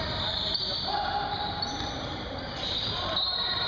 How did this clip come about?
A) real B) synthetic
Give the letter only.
B